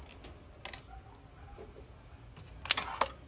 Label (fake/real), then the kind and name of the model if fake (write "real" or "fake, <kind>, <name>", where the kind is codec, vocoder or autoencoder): real